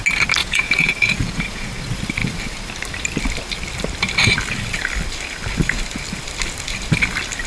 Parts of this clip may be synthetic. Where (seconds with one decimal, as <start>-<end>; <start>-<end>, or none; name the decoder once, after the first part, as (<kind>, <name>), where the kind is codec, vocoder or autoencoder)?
0.4-1.7 (vocoder, Vocos)